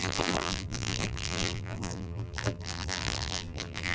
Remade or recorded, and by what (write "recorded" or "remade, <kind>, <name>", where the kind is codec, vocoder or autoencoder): remade, vocoder, BigVGAN v2